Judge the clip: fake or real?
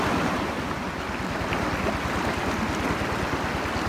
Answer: real